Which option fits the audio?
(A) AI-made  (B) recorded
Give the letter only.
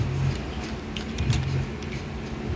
B